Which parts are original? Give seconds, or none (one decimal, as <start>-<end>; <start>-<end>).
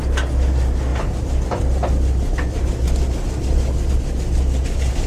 0.0-5.1